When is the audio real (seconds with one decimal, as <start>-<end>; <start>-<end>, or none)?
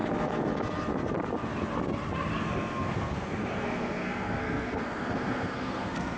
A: 0.0-2.4